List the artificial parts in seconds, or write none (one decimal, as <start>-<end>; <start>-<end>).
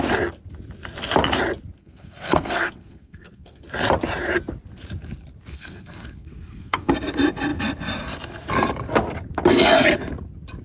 1.8-3.6; 5.5-6.9